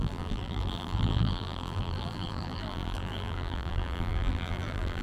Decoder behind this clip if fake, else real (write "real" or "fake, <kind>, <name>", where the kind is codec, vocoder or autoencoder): fake, vocoder, BigVGAN v2